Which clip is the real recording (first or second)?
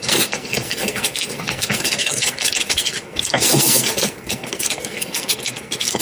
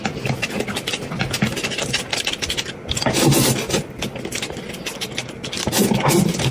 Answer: second